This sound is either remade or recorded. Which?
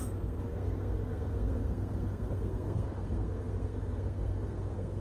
remade